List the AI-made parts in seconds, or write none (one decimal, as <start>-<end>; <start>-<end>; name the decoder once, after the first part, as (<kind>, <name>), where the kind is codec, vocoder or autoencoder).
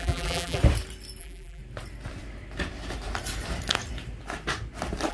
0.0-0.6 (vocoder, BigVGAN v2); 1.2-1.6